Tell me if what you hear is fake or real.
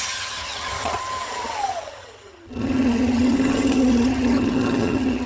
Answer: fake